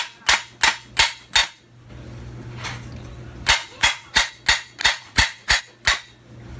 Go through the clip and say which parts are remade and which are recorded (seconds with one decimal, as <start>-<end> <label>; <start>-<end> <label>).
0.0-3.6 recorded; 3.6-4.3 remade; 4.3-4.8 recorded; 4.8-5.6 remade; 5.6-6.6 recorded

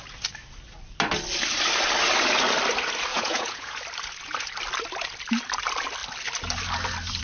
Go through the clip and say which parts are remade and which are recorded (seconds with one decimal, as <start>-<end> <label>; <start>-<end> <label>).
0.0-3.1 recorded; 3.1-3.8 remade; 3.8-7.2 recorded

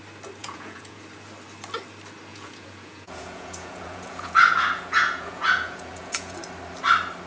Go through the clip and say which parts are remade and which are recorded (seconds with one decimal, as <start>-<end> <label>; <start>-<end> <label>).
0.0-0.4 recorded; 0.4-1.0 remade; 1.0-2.3 recorded; 2.3-6.4 remade; 6.4-7.3 recorded

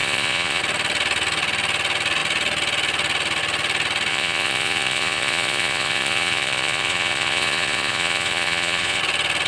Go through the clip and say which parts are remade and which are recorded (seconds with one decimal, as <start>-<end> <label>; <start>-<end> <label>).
0.0-0.6 remade; 0.6-4.1 recorded; 4.1-9.0 remade; 9.0-9.5 recorded

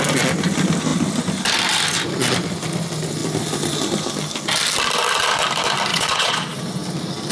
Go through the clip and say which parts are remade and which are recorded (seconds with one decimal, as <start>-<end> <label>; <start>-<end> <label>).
0.0-5.9 recorded; 5.9-6.6 remade; 6.6-7.3 recorded